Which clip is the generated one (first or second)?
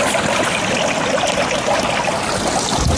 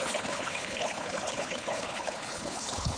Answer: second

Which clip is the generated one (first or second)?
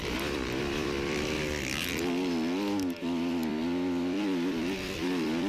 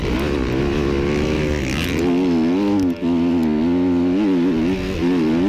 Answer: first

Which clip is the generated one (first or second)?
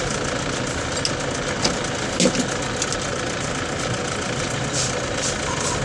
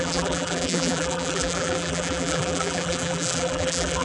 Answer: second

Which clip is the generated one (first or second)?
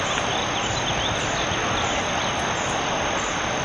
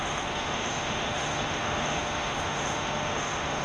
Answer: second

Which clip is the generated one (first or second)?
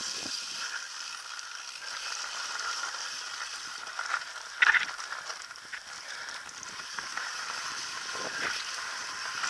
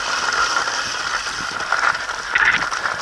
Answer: first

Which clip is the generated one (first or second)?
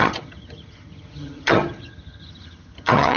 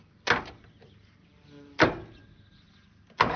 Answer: first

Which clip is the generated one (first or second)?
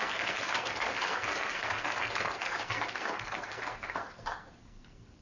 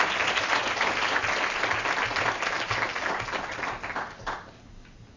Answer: first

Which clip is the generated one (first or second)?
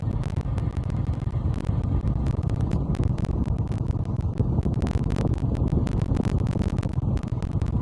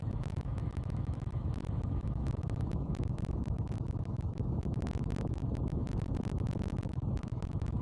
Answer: second